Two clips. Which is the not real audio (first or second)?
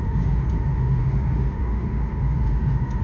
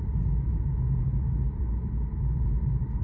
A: first